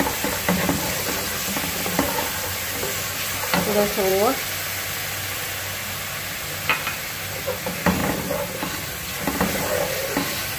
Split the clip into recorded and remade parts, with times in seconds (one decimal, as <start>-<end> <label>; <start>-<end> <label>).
0.0-10.6 recorded